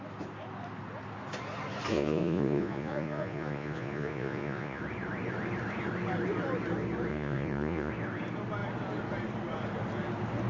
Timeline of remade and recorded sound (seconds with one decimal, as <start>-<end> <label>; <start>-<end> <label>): 0.0-1.9 recorded; 1.9-4.8 remade; 4.8-7.1 recorded; 7.1-7.9 remade; 7.9-10.5 recorded